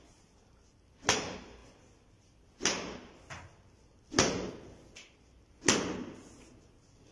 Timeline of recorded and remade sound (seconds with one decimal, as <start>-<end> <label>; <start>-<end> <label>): 0.0-7.1 recorded